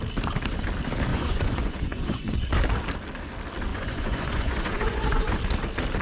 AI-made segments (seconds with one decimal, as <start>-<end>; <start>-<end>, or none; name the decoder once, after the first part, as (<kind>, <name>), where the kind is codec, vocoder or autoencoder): 1.1-2.5 (vocoder, Vocos); 3.7-5.4